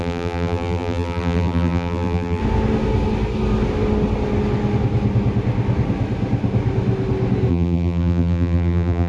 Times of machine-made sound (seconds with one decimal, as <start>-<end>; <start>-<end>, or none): 0.0-2.4; 7.5-9.1